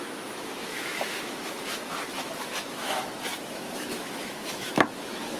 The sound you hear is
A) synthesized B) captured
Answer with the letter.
A